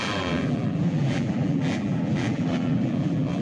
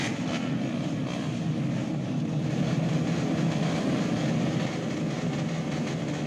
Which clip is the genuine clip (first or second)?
second